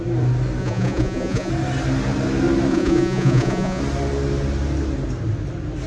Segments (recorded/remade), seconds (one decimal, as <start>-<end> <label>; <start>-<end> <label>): 0.0-0.6 recorded; 0.6-1.5 remade; 1.5-2.7 recorded; 2.7-3.8 remade; 3.8-5.9 recorded